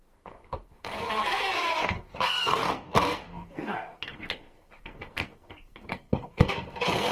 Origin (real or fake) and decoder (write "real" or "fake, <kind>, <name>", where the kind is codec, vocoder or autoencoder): fake, codec, SNAC